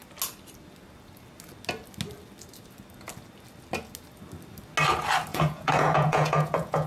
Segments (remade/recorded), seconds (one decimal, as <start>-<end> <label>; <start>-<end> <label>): 0.0-5.3 recorded; 5.3-6.9 remade